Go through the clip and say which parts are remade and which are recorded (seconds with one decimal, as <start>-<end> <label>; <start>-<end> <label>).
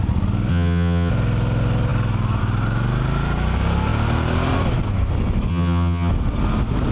0.0-0.5 recorded; 0.5-1.1 remade; 1.1-5.5 recorded; 5.5-6.1 remade; 6.1-6.9 recorded